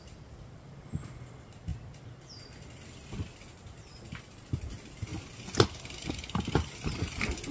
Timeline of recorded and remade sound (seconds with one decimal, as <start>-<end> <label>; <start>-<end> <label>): 0.0-1.7 remade; 1.7-4.2 recorded; 4.2-5.1 remade; 5.1-6.5 recorded; 6.5-7.5 remade